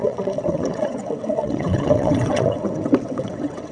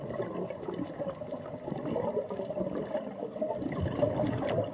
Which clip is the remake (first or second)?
first